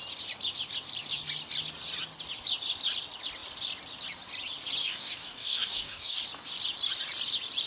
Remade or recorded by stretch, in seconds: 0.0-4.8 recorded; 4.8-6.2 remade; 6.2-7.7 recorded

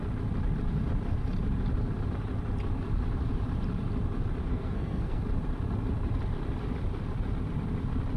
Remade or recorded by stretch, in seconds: 0.0-4.5 recorded; 4.5-5.2 remade; 5.2-8.2 recorded

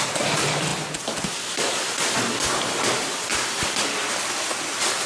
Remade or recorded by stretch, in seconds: 0.0-5.1 recorded

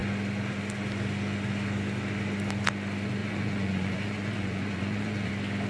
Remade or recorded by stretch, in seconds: 0.0-3.2 recorded; 3.2-5.3 remade; 5.3-5.7 recorded

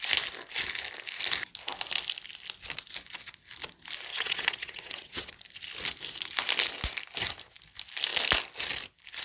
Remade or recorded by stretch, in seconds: 0.0-4.1 recorded; 4.1-5.3 remade; 5.3-9.2 recorded